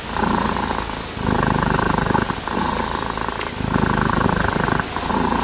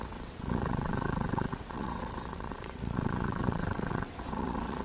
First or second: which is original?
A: first